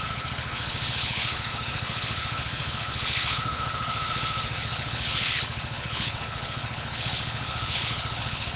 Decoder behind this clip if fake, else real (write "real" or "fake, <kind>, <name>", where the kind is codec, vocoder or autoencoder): fake, codec, HILCodec